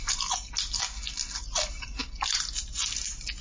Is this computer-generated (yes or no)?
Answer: no